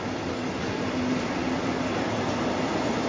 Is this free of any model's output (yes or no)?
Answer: yes